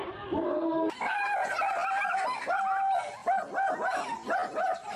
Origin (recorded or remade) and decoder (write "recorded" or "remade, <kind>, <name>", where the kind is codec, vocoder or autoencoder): recorded